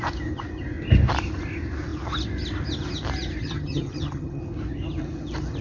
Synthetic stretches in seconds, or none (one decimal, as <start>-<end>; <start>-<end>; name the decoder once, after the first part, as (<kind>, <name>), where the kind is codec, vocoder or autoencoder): 3.4-4.4 (vocoder, HiFi-GAN)